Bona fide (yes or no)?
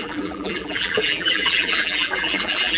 no